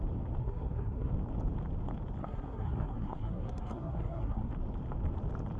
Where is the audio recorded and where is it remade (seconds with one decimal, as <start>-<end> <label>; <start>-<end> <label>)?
0.0-0.4 recorded; 0.4-1.1 remade; 1.1-2.2 recorded; 2.2-4.5 remade; 4.5-5.6 recorded